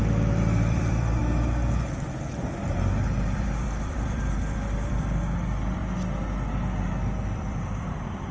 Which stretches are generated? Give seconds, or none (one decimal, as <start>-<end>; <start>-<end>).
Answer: 0.0-1.2; 2.6-5.8; 6.9-8.3